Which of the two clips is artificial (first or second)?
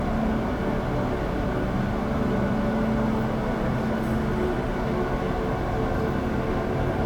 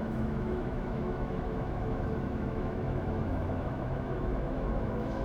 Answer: second